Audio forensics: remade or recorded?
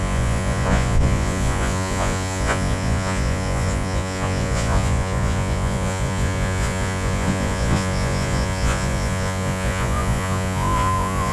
remade